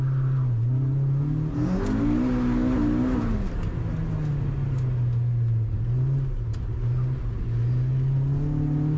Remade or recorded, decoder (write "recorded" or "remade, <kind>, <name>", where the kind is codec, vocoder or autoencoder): recorded